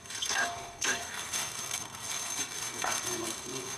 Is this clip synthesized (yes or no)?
yes